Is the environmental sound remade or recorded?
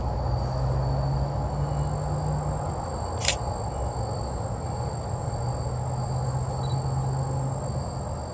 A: recorded